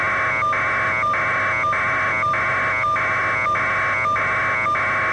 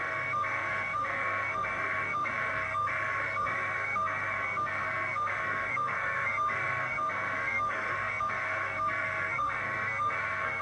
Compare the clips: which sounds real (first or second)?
first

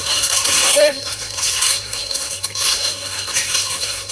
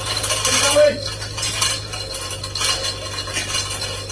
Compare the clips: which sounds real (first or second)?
second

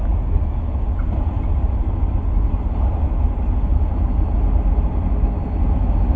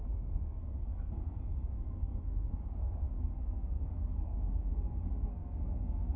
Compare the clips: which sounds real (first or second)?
first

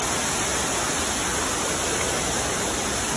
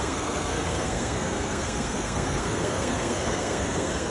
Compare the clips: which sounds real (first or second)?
first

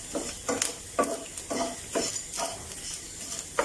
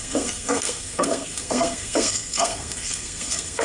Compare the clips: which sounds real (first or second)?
first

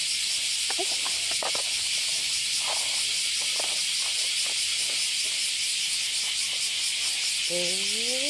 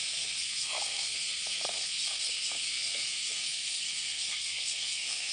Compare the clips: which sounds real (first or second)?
first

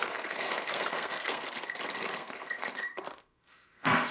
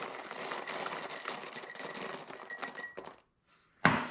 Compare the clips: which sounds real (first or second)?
second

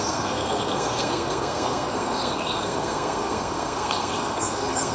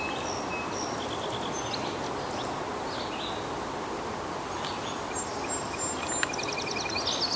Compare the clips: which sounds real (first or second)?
second